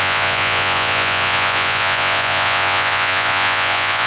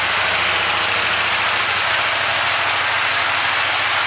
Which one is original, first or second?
second